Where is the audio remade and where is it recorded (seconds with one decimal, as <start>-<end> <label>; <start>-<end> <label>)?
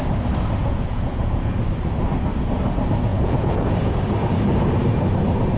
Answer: 0.0-0.6 recorded; 0.6-1.6 remade; 1.6-3.1 recorded; 3.1-4.0 remade; 4.0-5.6 recorded